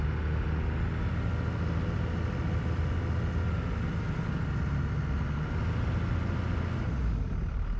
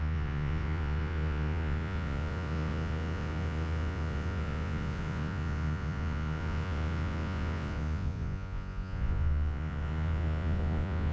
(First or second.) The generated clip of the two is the second